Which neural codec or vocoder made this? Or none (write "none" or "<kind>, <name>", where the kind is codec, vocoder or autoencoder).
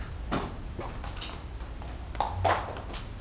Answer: none